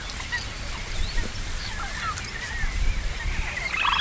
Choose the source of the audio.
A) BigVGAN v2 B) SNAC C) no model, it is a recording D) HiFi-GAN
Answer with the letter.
C